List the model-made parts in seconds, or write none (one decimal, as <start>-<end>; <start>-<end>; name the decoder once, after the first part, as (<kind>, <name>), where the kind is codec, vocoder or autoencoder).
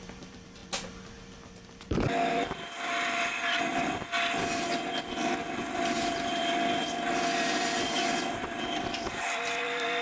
0.0-0.6 (vocoder, BigVGAN v2); 2.3-3.7; 5.8-10.0